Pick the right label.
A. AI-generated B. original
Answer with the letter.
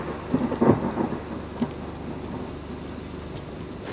B